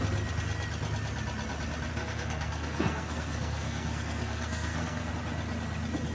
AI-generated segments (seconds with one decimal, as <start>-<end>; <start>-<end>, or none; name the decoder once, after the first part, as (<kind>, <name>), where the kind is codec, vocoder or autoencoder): 1.9-5.1 (codec, SNAC)